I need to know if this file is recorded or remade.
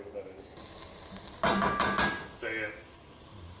recorded